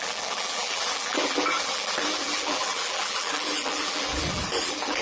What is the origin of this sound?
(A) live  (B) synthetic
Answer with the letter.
B